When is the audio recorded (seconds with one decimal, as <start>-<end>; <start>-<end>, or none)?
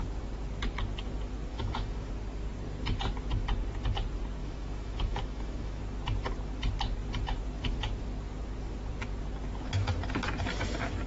0.0-1.5; 2.1-4.4; 5.8-11.1